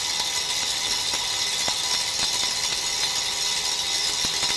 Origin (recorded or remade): recorded